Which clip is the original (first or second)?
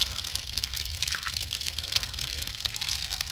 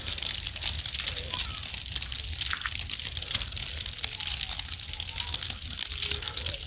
second